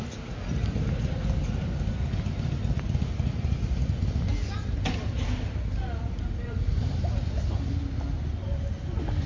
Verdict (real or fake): real